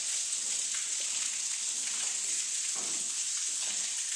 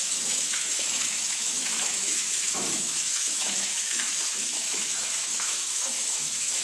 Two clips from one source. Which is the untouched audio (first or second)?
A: first